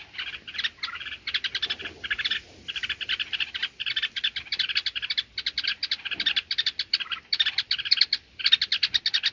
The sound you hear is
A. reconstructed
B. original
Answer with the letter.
B